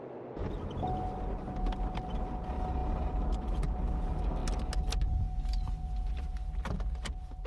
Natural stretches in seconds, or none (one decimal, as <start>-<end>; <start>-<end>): 0.0-7.5